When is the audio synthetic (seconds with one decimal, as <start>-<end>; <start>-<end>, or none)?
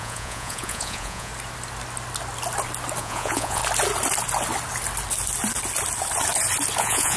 0.0-1.3; 3.0-3.6; 6.8-7.2